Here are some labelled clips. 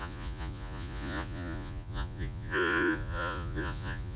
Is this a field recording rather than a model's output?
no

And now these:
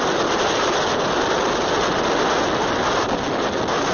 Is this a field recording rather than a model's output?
yes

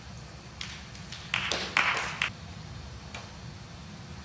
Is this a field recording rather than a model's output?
yes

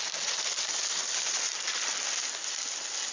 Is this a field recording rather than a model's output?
yes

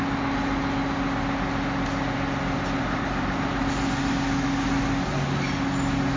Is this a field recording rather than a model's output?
yes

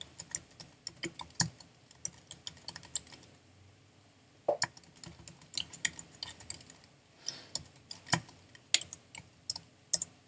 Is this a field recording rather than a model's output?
yes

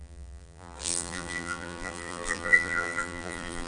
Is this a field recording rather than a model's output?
no